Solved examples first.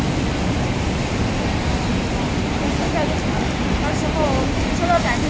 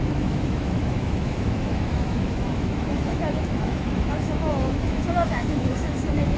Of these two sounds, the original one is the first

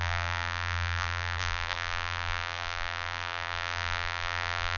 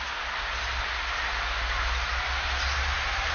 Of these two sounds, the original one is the second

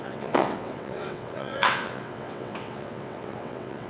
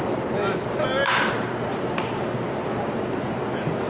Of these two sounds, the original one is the second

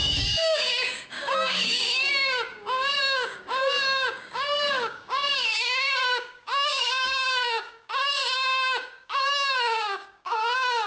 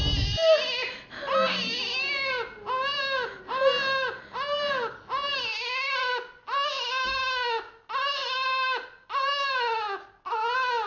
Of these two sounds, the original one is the second